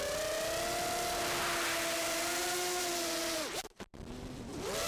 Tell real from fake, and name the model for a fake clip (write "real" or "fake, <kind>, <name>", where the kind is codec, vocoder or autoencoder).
real